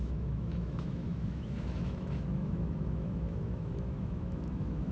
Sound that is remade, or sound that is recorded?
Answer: remade